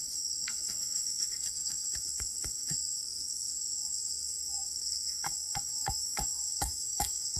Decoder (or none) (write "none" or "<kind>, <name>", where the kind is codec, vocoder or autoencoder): codec, SNAC